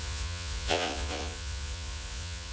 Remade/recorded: remade